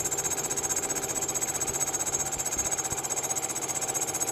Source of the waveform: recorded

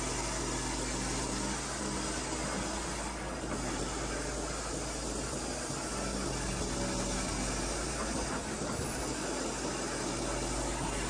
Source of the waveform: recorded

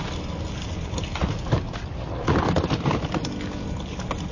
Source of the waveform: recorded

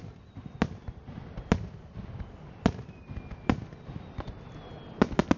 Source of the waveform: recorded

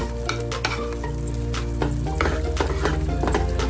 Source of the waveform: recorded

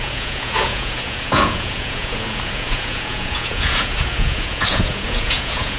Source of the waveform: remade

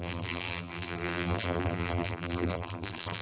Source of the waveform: remade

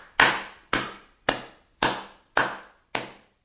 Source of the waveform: recorded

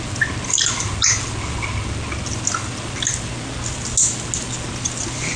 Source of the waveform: recorded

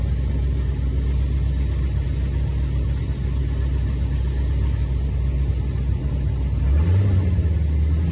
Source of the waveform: recorded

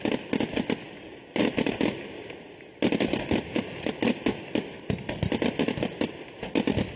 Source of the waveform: recorded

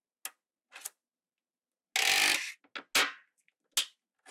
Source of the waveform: recorded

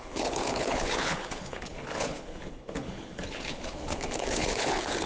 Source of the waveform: remade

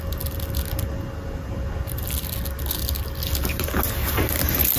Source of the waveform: recorded